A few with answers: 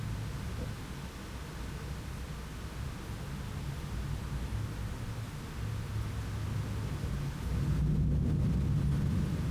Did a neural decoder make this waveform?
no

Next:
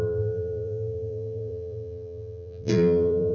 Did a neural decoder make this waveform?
yes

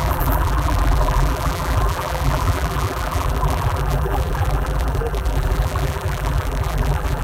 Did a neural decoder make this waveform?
yes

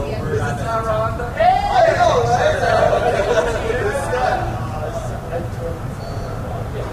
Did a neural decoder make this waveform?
yes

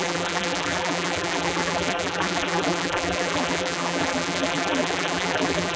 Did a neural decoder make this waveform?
yes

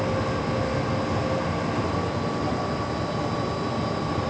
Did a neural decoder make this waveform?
no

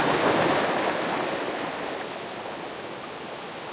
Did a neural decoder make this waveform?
no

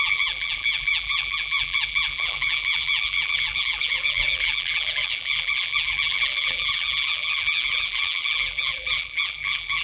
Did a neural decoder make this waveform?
yes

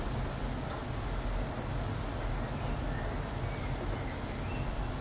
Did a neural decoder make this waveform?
no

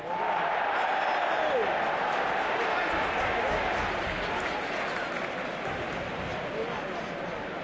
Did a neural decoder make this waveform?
no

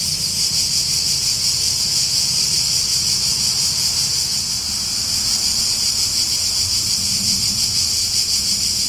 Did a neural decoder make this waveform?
no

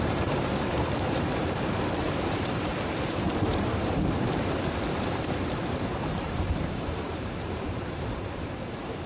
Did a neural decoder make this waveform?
yes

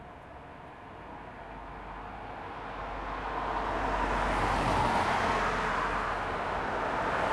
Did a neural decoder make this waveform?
no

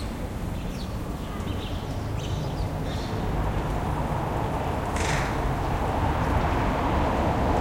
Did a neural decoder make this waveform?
no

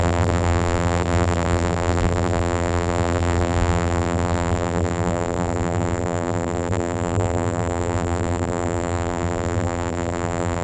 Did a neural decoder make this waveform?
yes